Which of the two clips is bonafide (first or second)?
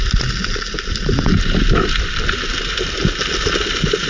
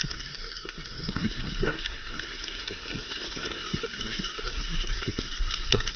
first